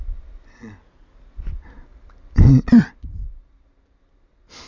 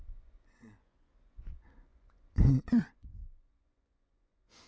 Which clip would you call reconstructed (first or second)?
second